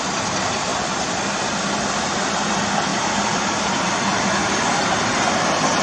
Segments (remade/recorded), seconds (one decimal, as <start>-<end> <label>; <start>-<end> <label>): 0.0-2.9 recorded; 2.9-3.8 remade; 3.8-5.8 recorded